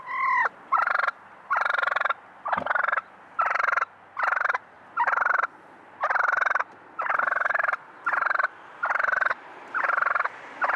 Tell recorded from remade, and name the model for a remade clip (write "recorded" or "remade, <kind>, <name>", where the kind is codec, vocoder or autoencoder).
recorded